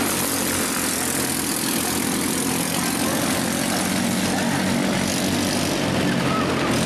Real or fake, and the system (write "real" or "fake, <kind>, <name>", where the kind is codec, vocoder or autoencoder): real